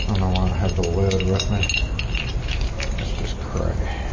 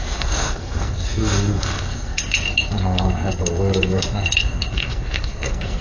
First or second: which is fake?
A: second